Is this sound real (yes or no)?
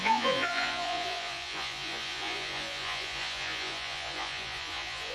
no